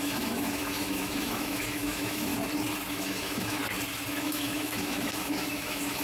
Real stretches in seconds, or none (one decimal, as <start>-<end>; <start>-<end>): 2.3-2.9; 3.6-4.1